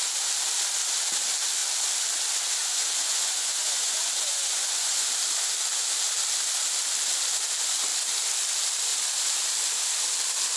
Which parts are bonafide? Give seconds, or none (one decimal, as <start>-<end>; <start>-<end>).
0.0-2.6; 5.1-10.6